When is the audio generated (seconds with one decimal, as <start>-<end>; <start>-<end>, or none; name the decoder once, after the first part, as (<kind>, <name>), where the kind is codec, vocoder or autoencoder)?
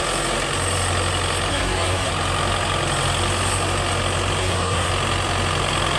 1.5-2.1 (codec, SNAC); 4.4-4.9